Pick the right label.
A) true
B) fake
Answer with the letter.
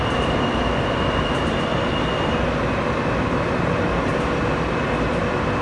A